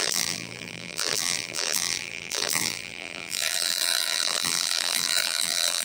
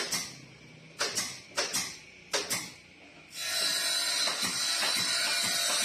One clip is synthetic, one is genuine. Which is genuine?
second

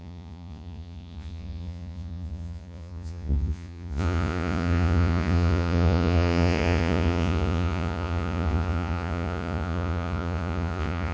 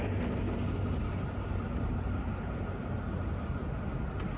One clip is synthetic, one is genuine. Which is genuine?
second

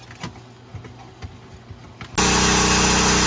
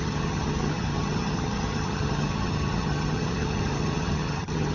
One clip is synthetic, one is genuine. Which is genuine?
first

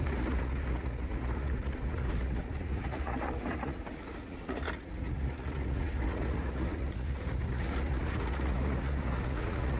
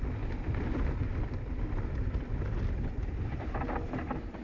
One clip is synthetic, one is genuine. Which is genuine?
second